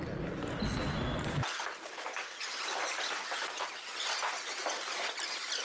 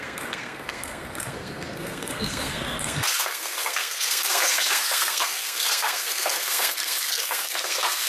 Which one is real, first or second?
first